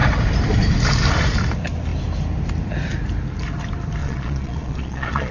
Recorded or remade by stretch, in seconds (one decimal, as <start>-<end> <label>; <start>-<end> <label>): 0.0-4.0 recorded; 4.0-5.3 remade